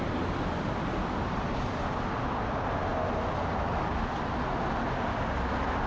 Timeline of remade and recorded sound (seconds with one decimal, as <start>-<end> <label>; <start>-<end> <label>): 0.0-5.9 recorded